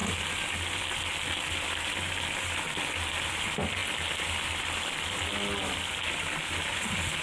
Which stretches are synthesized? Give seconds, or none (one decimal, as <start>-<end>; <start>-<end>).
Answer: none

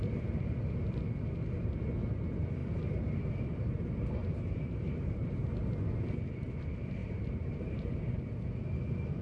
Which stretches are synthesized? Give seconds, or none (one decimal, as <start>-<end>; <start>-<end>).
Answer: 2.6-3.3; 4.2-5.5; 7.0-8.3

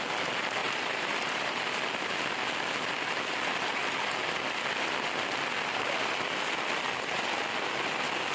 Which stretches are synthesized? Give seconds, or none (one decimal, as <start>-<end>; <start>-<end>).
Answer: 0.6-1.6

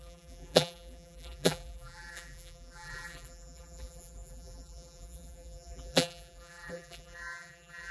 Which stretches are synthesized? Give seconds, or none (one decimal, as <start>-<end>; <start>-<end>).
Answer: 0.0-7.9

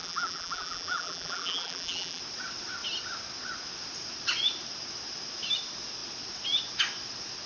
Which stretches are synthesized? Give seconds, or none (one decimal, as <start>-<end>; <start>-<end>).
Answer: 0.0-2.2

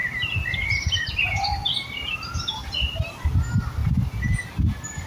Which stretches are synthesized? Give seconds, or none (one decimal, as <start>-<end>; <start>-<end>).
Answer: 0.0-3.1

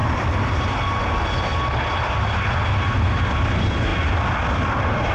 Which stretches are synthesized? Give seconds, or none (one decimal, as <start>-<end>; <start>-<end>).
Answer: 0.0-0.7; 1.5-2.5; 3.9-5.1

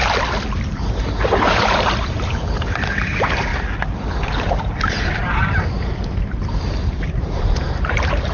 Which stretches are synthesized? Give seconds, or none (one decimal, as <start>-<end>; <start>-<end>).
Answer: 0.9-3.5; 4.2-8.3